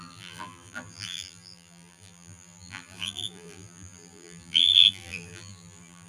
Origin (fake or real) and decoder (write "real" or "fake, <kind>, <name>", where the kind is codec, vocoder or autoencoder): fake, vocoder, BigVGAN v2